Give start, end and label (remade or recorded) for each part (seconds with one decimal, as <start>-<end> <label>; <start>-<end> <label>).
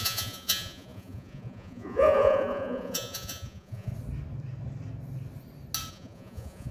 0.0-3.9 remade; 3.9-5.9 recorded; 5.9-6.7 remade